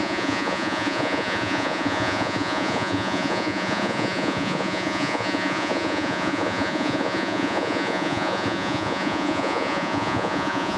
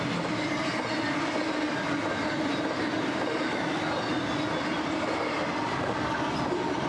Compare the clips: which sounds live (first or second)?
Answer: second